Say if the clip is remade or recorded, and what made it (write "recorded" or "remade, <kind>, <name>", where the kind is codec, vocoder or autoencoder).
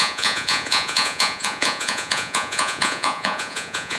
remade, vocoder, Vocos